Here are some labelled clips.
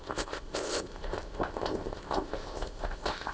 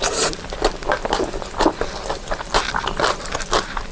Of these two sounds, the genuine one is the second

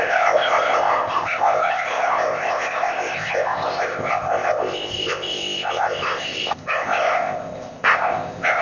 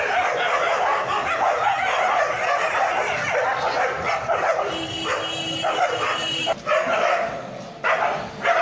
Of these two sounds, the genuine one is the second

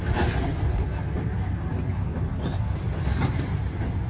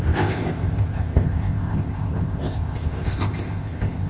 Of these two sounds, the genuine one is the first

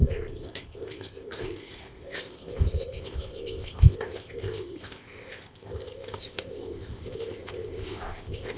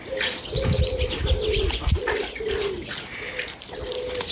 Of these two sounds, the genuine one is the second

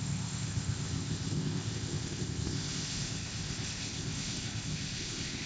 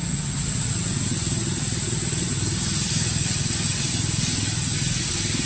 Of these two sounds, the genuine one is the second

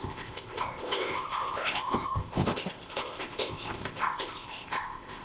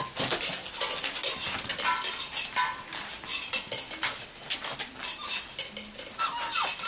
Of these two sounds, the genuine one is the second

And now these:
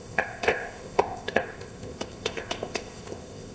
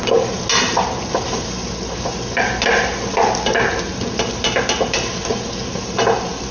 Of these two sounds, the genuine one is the second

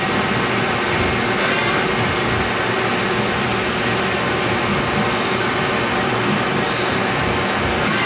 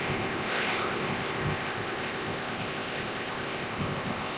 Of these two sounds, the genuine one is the first